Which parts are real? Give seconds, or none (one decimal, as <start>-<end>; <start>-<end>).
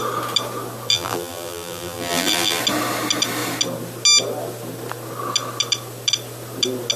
0.0-0.9; 2.6-7.0